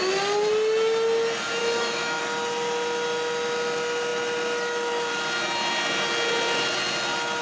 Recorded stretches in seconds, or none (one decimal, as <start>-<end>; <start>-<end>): 0.0-1.6; 2.2-7.4